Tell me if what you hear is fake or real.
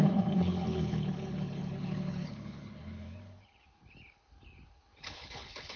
fake